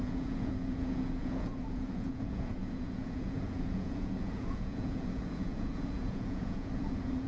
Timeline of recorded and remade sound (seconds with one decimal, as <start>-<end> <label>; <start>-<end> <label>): 0.0-7.3 remade